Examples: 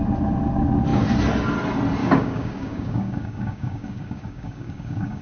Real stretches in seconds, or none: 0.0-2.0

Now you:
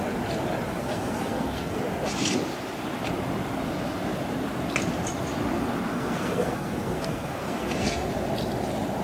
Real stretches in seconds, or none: 0.0-0.8; 1.8-5.9; 8.1-9.0

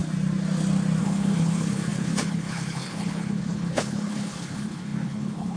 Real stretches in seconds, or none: 0.0-1.0